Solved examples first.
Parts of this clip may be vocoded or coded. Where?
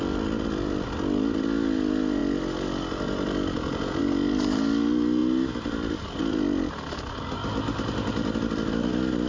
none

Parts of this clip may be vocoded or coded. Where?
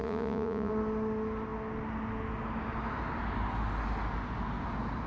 0.0-0.7 (vocoder, Vocos)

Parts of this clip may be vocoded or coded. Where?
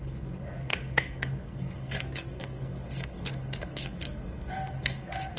0.0-5.4 (codec, SNAC)